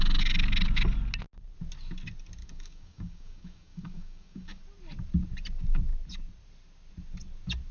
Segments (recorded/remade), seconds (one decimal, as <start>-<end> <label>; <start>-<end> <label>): 0.0-2.4 recorded; 2.4-4.6 remade; 4.6-7.7 recorded